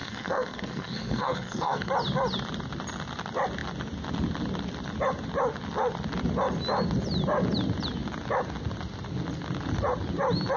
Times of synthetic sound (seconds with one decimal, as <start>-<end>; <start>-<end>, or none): 0.0-1.9